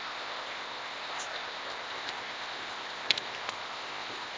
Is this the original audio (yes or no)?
no